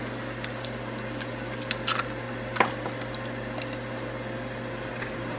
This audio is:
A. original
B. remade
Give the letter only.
A